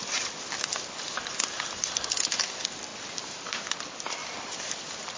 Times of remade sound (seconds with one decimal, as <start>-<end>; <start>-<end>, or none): none